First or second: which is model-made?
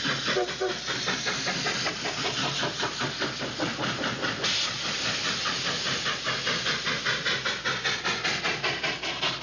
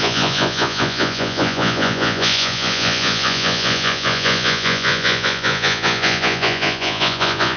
second